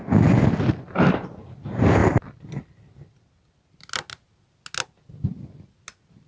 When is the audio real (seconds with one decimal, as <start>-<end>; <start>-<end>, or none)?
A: 0.0-2.0; 3.8-6.3